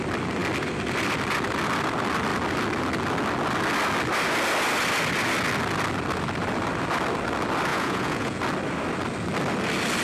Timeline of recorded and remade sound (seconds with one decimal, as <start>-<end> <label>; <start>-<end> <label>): 0.0-7.7 recorded; 7.7-8.4 remade; 8.4-10.0 recorded